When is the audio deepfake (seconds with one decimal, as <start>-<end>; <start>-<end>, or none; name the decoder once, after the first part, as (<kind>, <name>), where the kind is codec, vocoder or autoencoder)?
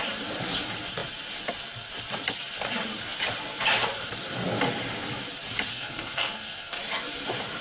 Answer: 5.7-6.8 (codec, SNAC)